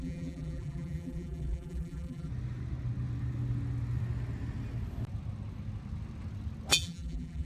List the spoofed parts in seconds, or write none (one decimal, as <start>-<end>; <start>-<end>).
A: 0.0-2.3; 6.7-7.4